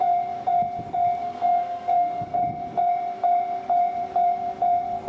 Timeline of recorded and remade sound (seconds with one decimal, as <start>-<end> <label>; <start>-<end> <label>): 0.0-1.2 recorded; 1.2-2.4 remade; 2.4-5.1 recorded